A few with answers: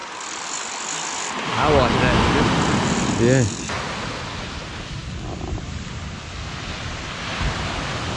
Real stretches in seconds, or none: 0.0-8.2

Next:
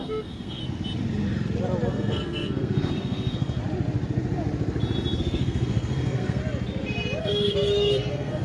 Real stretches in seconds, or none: 0.6-1.9; 3.6-5.2; 6.4-7.2

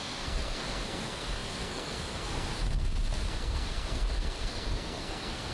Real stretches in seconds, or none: none

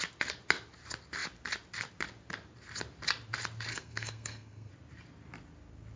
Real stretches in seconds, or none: 0.0-3.7; 4.7-6.0

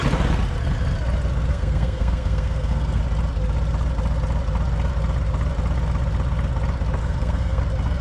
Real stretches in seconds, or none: 0.0-1.5; 3.0-7.0; 7.6-8.0

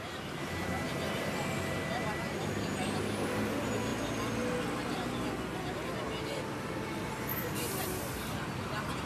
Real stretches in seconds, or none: 0.0-9.1

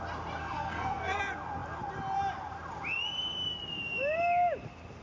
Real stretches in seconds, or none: 0.0-0.4; 1.2-5.0